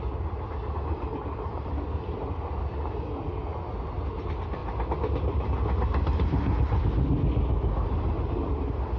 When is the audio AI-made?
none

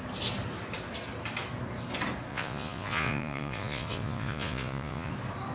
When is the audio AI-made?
2.3-5.1 (vocoder, Vocos)

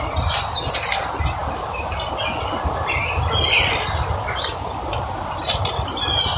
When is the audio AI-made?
none

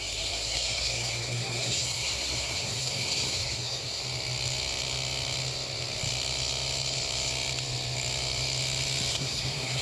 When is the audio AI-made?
0.0-4.0 (codec, SNAC); 9.1-9.8

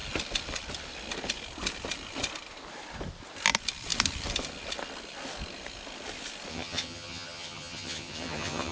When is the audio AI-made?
6.5-8.7 (vocoder, HiFi-GAN)

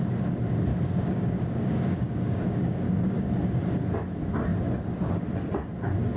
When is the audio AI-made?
0.7-3.2 (codec, DAC)

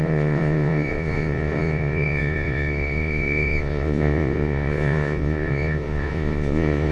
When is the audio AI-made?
0.0-6.9 (vocoder, Vocos)

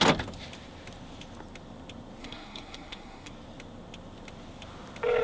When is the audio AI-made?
2.2-3.3 (codec, SNAC)